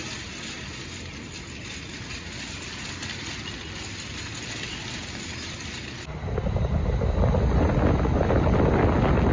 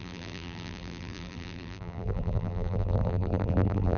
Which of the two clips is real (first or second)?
first